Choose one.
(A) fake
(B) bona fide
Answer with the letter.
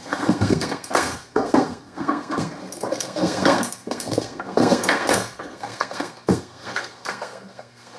A